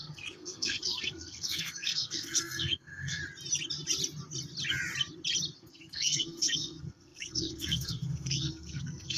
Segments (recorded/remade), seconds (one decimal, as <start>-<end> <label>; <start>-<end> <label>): 0.0-3.2 remade; 3.2-5.6 recorded; 5.6-9.2 remade